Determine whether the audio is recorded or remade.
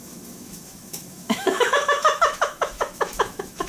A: remade